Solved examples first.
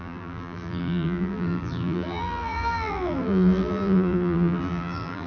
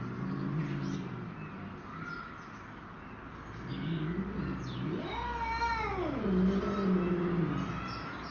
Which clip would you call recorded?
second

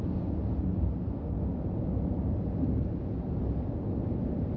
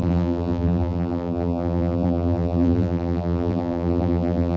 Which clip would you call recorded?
first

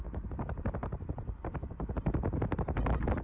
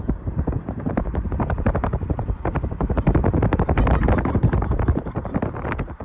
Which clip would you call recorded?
first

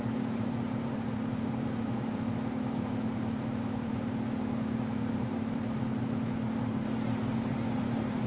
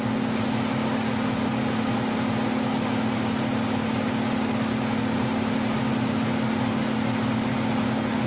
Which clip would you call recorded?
second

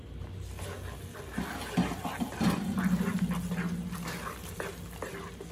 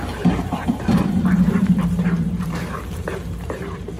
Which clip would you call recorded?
first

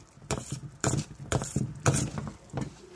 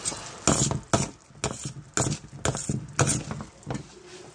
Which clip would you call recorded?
second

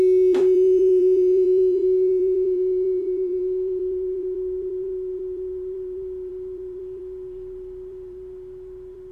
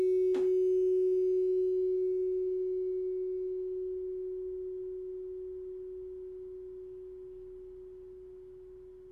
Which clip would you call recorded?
second